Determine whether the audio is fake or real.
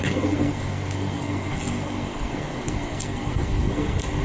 fake